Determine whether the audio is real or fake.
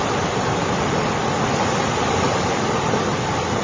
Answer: real